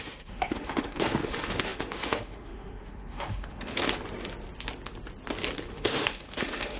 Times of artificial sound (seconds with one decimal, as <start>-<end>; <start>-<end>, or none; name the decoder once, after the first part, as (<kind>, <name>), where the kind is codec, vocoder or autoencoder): 0.0-3.8 (autoencoder, DAC-VAE); 5.7-6.8